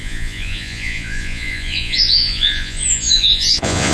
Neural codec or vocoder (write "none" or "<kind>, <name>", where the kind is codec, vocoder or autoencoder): vocoder, Vocos